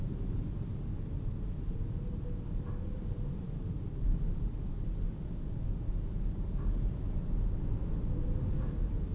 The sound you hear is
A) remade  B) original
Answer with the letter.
B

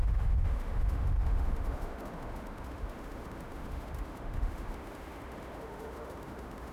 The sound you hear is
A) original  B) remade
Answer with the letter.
B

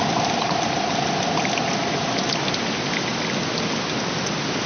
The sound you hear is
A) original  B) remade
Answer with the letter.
A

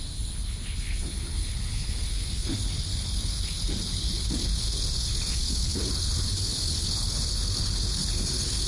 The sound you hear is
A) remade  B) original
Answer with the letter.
A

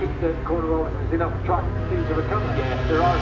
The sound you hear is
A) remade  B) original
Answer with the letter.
B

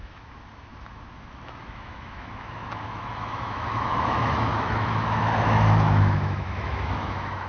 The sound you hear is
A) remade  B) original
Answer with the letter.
A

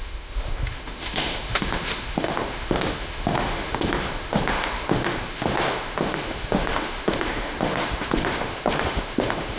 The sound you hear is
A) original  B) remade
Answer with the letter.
B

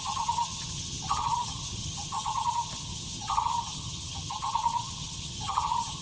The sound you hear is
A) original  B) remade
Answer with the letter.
B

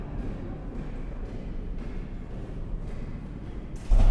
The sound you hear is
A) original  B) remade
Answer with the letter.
A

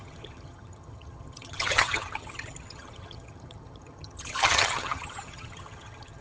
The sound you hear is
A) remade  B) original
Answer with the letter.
A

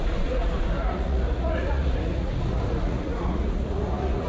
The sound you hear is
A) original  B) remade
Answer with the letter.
B